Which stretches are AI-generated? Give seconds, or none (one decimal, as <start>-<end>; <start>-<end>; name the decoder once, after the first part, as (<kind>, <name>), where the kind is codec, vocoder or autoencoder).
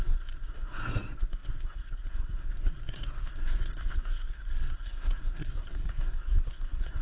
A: 0.0-7.0 (codec, SNAC)